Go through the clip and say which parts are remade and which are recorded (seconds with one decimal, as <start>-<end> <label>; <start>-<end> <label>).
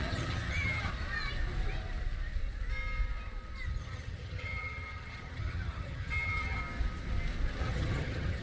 0.0-0.9 remade; 0.9-3.8 recorded; 3.8-6.6 remade; 6.6-7.6 recorded; 7.6-8.4 remade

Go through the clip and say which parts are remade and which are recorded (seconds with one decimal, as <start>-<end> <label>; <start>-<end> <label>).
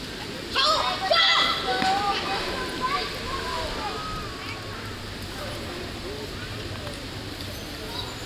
0.0-8.3 recorded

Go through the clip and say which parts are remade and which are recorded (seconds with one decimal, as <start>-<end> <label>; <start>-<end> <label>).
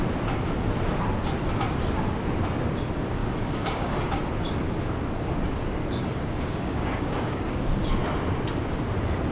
0.0-3.2 recorded; 3.2-4.0 remade; 4.0-6.0 recorded; 6.0-7.6 remade; 7.6-9.3 recorded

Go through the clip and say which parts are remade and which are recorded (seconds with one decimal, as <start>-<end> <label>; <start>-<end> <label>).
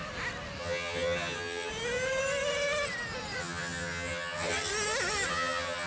0.0-0.6 recorded; 0.6-1.7 remade; 1.7-3.4 recorded; 3.4-4.7 remade; 4.7-5.3 recorded; 5.3-5.9 remade